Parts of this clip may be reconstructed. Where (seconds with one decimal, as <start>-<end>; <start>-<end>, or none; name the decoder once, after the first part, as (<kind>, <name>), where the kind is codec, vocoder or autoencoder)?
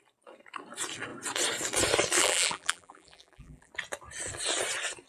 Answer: 2.2-3.7 (vocoder, BigVGAN v2)